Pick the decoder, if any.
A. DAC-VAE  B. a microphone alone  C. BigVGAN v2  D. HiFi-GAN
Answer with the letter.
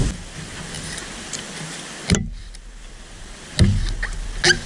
B